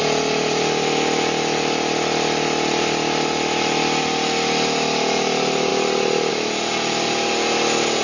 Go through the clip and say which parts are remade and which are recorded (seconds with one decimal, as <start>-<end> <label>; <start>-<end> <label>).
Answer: 0.0-8.0 recorded